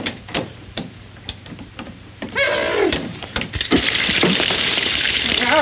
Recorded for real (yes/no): no